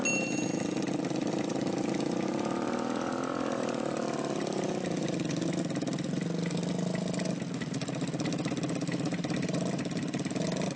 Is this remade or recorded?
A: recorded